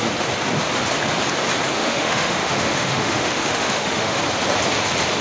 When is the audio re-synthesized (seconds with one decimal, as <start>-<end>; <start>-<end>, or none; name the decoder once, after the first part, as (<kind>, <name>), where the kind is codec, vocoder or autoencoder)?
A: 1.8-4.2 (autoencoder, DAC-VAE)